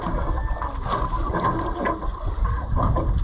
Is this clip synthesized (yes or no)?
no